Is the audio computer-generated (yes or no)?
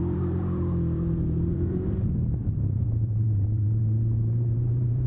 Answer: yes